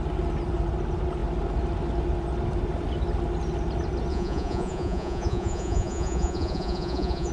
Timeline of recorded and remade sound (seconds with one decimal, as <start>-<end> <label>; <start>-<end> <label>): 0.0-4.1 recorded; 4.1-7.3 remade